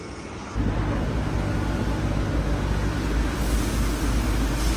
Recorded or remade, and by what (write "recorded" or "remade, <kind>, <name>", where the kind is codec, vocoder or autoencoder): recorded